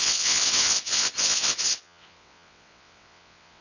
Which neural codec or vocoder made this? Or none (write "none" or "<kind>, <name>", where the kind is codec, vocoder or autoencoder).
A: vocoder, WaveNeXt